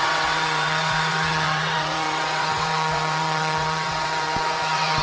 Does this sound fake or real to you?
fake